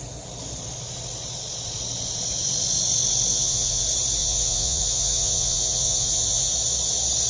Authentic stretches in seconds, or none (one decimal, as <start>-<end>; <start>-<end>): 0.0-3.3; 3.8-4.2; 6.5-7.3